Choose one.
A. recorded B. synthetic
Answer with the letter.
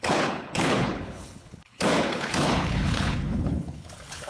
B